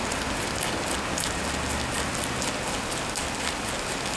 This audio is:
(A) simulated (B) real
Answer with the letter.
B